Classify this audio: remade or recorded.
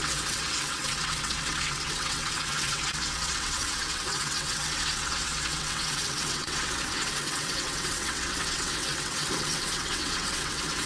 remade